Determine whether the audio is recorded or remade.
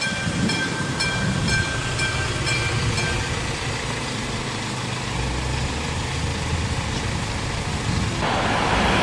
recorded